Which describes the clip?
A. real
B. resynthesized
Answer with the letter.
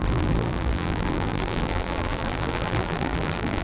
B